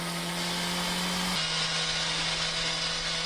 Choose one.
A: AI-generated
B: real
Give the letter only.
B